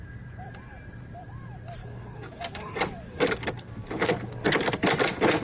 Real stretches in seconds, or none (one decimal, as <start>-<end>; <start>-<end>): 0.0-1.8; 4.1-5.4